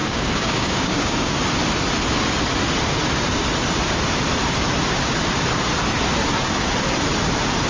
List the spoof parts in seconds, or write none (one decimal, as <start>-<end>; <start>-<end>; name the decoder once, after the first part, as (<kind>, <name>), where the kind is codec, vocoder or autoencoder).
0.0-1.3 (codec, DAC)